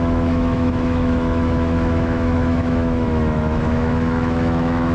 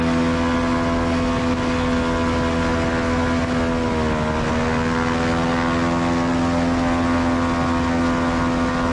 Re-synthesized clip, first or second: first